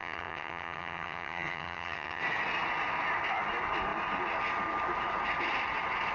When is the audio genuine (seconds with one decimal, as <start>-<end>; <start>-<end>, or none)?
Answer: 2.2-6.1